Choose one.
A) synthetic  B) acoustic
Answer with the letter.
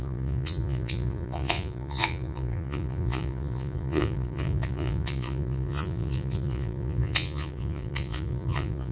A